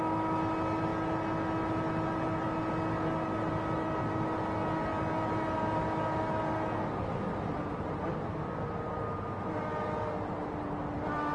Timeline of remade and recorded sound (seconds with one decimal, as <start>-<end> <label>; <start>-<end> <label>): 0.0-11.3 recorded